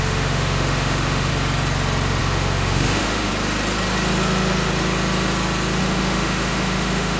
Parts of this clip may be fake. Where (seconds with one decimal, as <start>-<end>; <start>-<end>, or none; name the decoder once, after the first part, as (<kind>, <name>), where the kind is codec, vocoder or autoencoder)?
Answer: 0.0-1.3 (autoencoder, DAC-VAE); 2.2-3.3; 5.8-7.2